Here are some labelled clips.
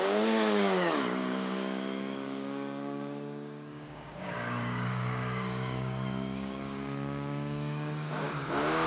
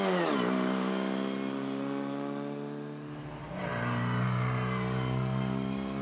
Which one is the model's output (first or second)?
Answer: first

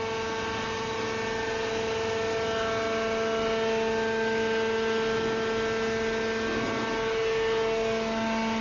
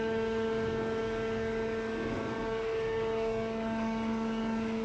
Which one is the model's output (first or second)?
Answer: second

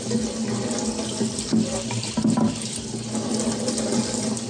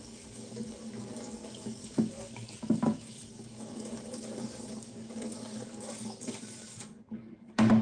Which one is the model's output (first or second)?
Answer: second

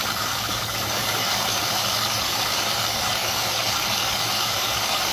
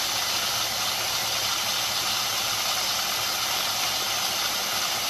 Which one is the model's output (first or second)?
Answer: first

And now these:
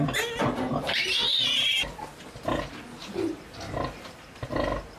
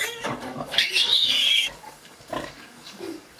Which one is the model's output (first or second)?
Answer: second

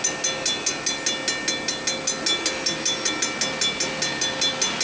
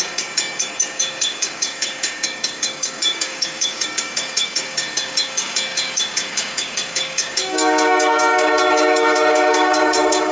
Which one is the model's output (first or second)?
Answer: second